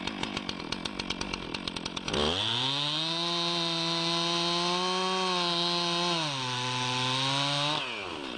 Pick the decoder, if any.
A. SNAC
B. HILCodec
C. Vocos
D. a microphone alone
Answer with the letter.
D